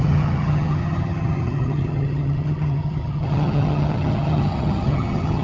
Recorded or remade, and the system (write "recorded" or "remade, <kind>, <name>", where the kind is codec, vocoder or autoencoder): remade, vocoder, HiFi-GAN